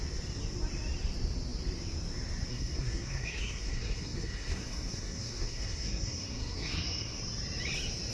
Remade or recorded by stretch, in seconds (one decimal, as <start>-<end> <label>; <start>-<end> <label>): 0.0-2.5 recorded; 2.5-7.2 remade; 7.2-8.1 recorded